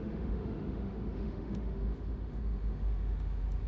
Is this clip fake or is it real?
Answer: fake